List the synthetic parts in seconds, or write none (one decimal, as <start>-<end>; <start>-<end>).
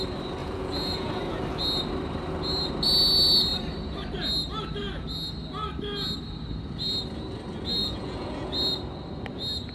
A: 0.4-1.1; 7.8-8.5